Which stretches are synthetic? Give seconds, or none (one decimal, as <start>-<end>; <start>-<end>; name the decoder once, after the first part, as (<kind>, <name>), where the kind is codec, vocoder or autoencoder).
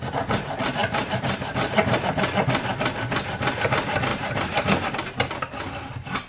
0.8-2.0 (vocoder, BigVGAN v2); 4.1-4.9